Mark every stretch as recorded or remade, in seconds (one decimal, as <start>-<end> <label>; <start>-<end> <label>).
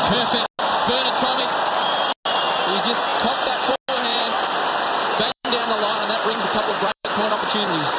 0.0-4.1 recorded; 4.1-7.5 remade; 7.5-8.0 recorded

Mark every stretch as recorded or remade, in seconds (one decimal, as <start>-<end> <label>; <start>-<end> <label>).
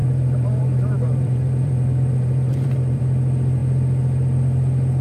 0.0-3.0 remade; 3.0-5.0 recorded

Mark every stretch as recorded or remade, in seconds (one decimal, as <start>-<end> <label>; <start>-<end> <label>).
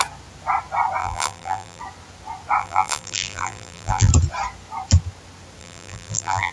0.0-1.0 recorded; 1.0-1.8 remade; 1.8-2.6 recorded; 2.6-4.1 remade; 4.1-5.6 recorded; 5.6-6.5 remade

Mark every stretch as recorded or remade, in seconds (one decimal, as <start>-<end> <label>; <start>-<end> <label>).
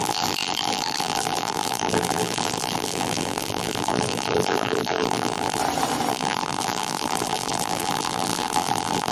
0.0-5.6 remade; 5.6-6.1 recorded; 6.1-9.1 remade